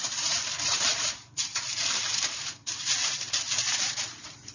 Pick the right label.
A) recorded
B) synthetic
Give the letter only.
B